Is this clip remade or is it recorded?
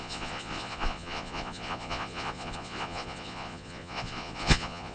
remade